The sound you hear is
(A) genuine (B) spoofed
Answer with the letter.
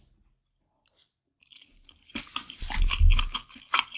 A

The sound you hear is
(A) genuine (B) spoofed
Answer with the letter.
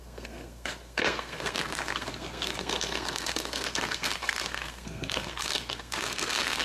B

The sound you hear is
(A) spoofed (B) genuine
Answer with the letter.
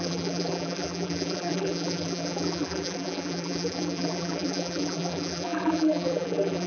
A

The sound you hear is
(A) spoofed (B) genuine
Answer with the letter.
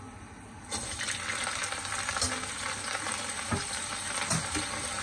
B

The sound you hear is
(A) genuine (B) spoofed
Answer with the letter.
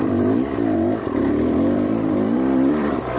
B